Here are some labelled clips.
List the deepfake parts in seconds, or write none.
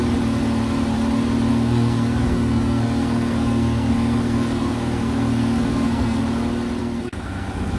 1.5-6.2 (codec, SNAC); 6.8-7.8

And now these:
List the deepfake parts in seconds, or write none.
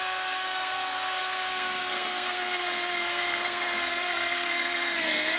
0.0-5.4 (codec, SNAC)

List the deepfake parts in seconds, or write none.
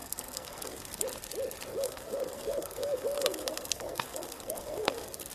0.0-1.0 (codec, SNAC); 1.7-5.3